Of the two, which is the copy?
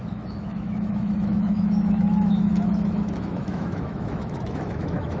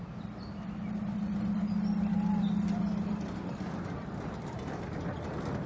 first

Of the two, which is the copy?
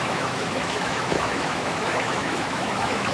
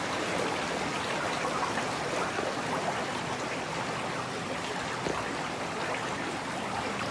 first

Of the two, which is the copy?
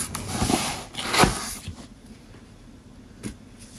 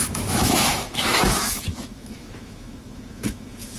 second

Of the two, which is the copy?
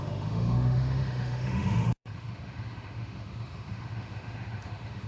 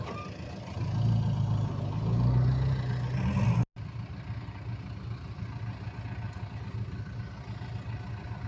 first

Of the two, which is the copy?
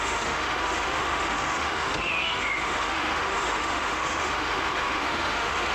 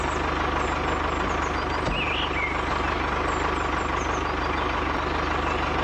first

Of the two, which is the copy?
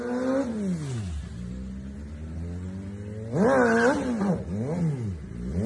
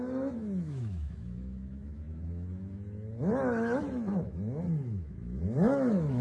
second